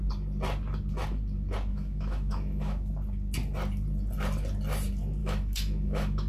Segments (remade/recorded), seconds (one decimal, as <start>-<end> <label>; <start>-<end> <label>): 0.0-1.7 recorded; 1.7-2.9 remade; 2.9-5.2 recorded; 5.2-6.3 remade

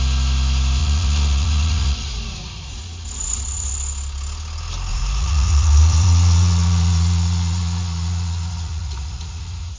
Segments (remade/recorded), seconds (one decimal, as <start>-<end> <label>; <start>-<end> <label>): 0.0-0.8 recorded; 0.8-3.7 remade; 3.7-4.9 recorded; 4.9-9.8 remade